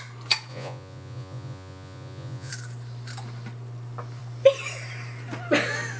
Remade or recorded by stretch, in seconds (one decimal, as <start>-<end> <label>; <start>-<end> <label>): 0.0-0.5 recorded; 0.5-2.5 remade; 2.5-6.0 recorded